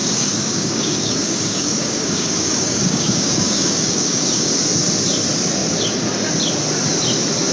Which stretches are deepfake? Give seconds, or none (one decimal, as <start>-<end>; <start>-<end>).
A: 0.0-4.5